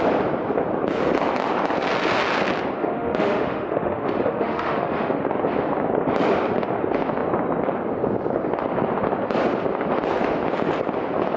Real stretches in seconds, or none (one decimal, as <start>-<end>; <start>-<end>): 0.0-2.8; 5.2-11.4